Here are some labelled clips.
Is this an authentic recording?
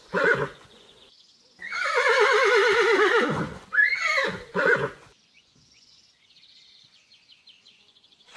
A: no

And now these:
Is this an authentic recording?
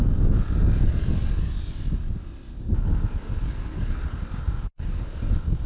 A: yes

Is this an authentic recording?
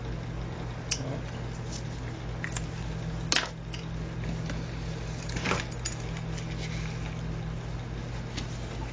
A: yes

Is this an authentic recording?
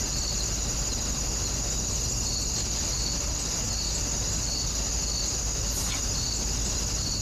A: yes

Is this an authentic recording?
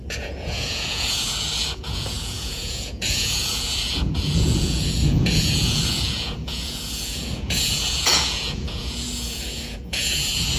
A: no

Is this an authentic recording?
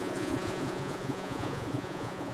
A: no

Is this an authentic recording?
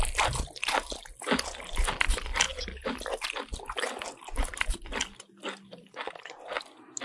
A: yes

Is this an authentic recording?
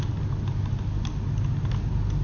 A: yes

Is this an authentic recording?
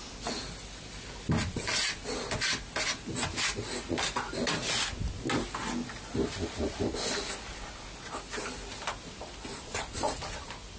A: yes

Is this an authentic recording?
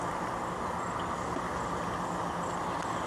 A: yes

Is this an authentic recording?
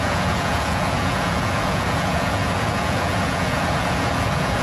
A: no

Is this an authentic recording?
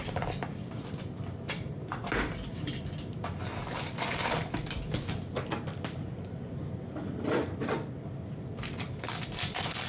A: yes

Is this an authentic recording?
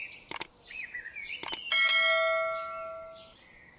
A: yes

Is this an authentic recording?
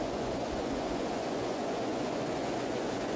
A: no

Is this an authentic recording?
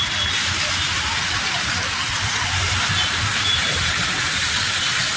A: yes